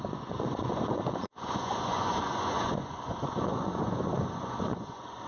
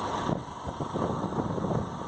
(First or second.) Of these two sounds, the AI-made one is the first